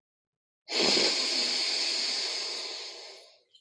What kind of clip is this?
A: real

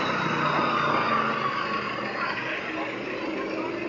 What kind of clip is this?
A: real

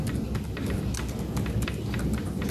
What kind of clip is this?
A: real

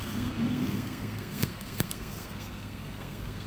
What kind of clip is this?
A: fake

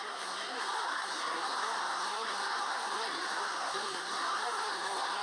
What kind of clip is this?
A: fake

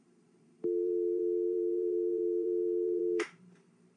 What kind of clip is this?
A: fake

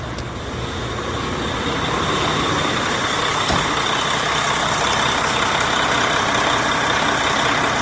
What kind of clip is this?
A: real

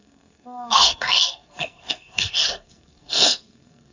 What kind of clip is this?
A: fake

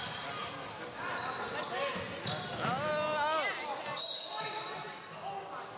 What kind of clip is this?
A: real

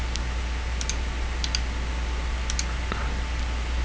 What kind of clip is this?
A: real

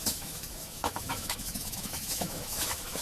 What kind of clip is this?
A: fake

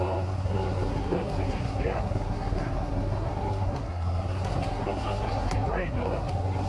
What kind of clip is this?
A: fake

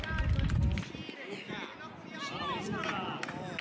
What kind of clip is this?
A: real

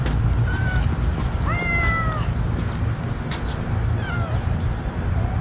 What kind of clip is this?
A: real